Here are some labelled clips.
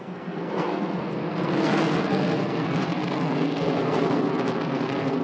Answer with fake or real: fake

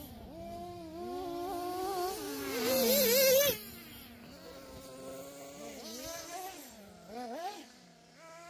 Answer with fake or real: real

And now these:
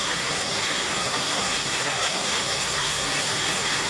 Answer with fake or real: fake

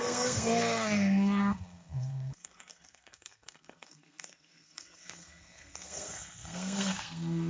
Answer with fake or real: fake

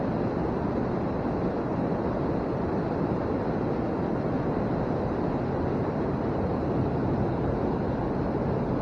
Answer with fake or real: real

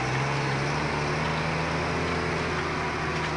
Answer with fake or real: real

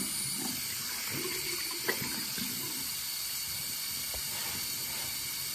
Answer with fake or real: real